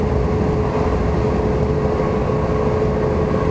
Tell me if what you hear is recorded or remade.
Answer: recorded